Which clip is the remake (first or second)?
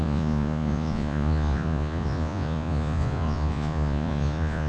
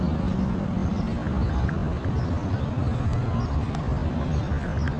first